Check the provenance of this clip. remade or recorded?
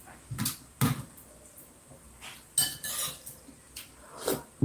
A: recorded